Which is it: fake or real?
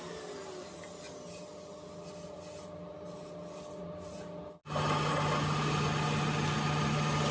real